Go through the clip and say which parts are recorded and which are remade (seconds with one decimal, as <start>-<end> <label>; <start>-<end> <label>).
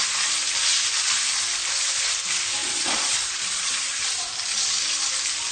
0.0-2.6 recorded; 2.6-4.2 remade; 4.2-5.5 recorded